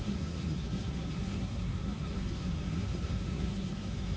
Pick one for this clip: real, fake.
fake